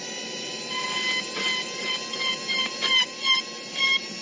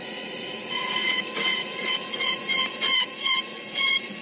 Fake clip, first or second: second